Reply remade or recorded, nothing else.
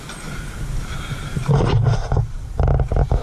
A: recorded